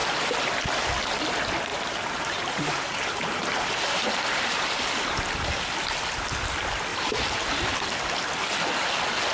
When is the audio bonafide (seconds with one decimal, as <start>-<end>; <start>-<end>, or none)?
0.0-1.7; 4.5-6.9; 7.4-9.3